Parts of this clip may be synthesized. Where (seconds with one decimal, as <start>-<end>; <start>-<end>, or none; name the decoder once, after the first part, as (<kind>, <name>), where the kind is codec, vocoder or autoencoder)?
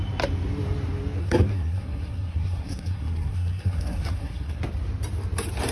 1.2-4.6 (codec, SNAC)